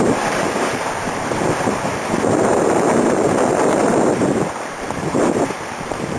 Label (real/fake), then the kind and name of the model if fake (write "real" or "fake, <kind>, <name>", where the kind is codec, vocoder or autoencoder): fake, vocoder, BigVGAN v2